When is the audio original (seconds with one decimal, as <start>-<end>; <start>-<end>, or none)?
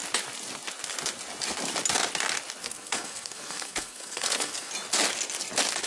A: 0.0-2.6; 4.7-5.9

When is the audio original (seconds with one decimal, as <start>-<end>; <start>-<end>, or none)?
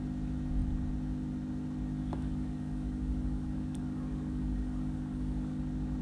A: 0.0-2.0; 5.6-6.0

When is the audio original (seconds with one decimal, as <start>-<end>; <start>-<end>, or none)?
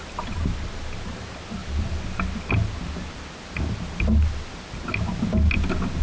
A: 0.0-6.0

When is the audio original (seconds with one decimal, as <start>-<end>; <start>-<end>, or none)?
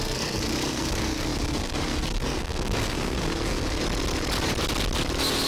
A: 3.8-5.5